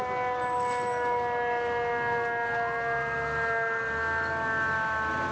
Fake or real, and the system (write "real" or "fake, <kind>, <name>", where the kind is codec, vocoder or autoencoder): real